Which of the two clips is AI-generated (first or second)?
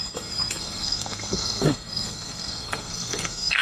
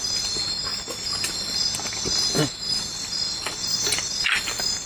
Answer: first